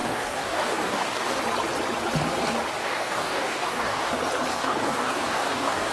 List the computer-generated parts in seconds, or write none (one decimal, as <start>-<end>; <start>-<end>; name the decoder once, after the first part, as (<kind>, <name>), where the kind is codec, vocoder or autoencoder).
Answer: 0.0-1.4 (codec, DAC); 2.8-4.1; 4.5-5.9